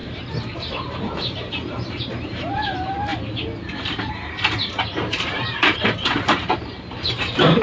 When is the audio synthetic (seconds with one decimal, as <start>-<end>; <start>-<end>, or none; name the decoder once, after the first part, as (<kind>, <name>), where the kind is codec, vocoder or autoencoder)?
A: 0.0-3.1 (vocoder, BigVGAN v2); 4.1-7.6